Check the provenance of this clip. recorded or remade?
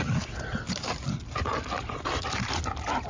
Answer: recorded